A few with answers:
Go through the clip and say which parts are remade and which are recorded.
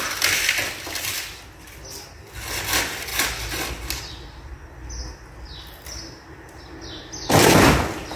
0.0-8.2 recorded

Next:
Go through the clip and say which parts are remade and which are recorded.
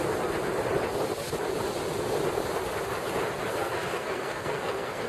0.0-3.5 recorded; 3.5-5.1 remade